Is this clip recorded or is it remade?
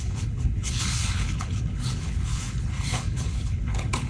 remade